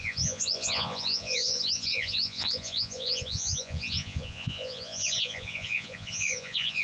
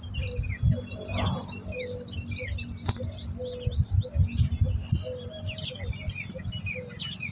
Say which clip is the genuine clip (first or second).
second